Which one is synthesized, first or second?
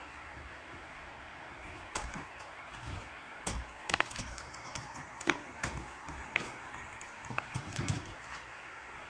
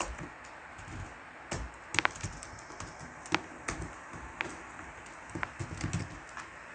first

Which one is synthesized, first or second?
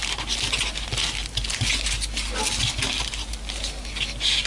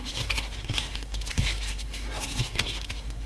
second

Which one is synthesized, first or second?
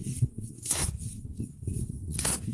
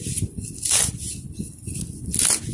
first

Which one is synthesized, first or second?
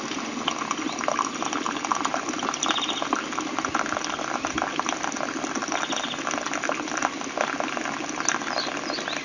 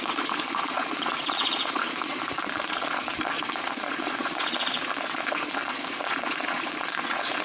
second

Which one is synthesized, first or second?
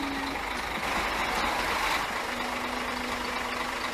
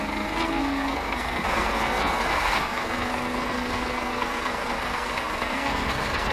second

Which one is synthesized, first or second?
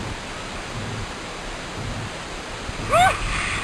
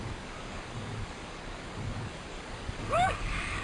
second